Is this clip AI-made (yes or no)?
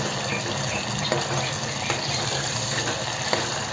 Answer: no